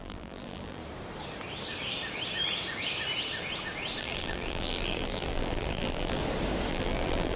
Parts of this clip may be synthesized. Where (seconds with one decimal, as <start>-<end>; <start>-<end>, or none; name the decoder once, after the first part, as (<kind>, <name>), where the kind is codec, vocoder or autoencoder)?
0.0-0.8 (vocoder, BigVGAN v2); 4.0-6.2; 6.7-7.4